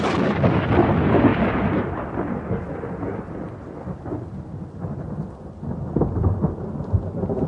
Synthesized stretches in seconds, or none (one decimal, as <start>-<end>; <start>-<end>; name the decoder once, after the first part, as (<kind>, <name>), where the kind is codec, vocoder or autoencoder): 1.3-2.6 (vocoder, BigVGAN v2)